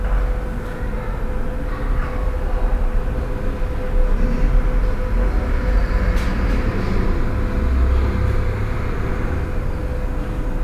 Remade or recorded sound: recorded